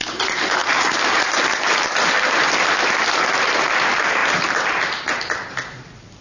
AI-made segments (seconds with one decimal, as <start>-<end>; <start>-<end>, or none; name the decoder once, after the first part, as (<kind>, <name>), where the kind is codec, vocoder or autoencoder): none